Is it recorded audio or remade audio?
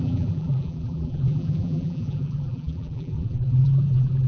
remade